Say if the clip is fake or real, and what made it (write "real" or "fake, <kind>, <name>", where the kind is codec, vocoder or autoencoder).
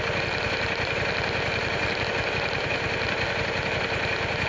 real